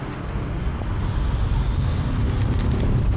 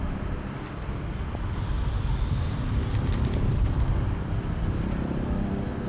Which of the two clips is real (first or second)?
first